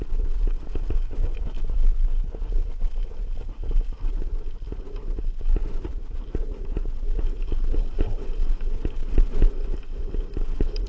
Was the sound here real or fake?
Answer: real